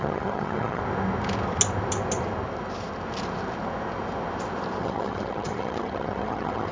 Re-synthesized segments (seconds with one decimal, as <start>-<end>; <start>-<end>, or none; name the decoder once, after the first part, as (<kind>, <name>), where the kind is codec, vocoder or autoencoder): 0.0-0.8 (vocoder, HiFi-GAN); 4.8-6.7